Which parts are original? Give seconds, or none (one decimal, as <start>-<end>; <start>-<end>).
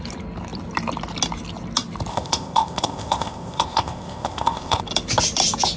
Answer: 0.0-2.1; 4.8-5.8